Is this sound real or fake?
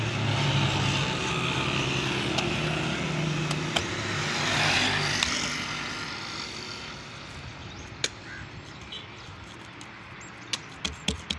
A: real